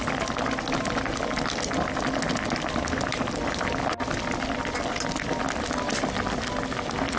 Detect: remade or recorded recorded